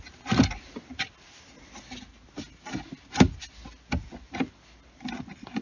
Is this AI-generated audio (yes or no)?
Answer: no